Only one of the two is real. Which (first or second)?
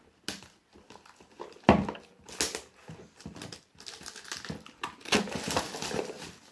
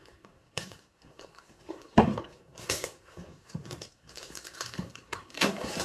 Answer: first